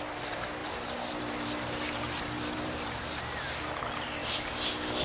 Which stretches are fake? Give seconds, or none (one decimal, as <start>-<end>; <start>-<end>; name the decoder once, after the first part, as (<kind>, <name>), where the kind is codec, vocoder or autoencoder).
0.6-3.6 (vocoder, BigVGAN v2)